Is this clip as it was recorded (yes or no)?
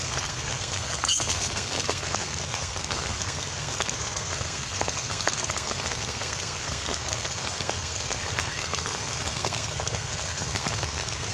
no